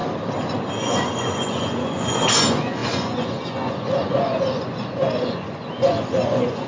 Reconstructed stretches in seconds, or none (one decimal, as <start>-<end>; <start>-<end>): 0.8-6.7